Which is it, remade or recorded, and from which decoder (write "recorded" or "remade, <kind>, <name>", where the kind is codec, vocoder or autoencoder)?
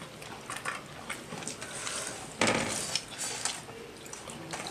recorded